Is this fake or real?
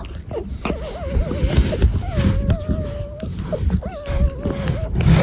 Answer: real